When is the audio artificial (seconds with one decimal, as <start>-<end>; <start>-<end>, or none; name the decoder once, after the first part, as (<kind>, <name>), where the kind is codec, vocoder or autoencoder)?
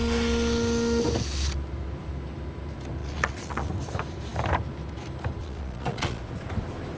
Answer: 3.0-3.7 (vocoder, Vocos); 5.4-6.2